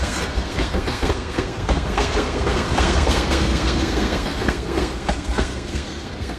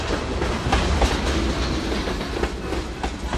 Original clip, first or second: second